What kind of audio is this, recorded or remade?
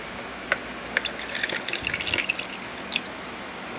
recorded